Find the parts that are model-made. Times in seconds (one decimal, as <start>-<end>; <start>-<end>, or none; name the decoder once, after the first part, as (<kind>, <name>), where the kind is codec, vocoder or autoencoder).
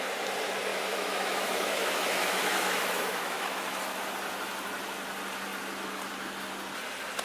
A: 0.7-3.8 (autoencoder, DAC-VAE)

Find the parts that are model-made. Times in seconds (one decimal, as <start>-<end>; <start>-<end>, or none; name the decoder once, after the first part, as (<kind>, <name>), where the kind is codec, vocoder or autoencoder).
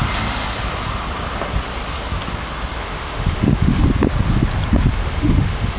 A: 2.8-3.8 (autoencoder, DAC-VAE); 5.0-5.8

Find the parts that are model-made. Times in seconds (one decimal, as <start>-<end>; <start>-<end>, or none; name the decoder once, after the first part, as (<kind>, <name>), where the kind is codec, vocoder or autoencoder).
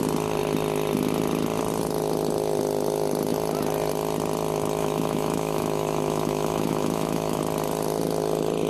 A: 4.8-7.4 (autoencoder, DAC-VAE)